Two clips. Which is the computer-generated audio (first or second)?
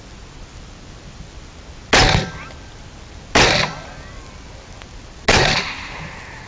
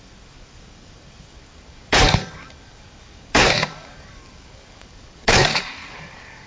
second